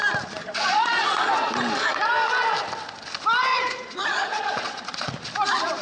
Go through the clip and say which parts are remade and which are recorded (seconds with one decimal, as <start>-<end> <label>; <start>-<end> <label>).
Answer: 0.0-0.4 recorded; 0.4-1.3 remade; 1.3-3.5 recorded; 3.5-5.1 remade; 5.1-5.8 recorded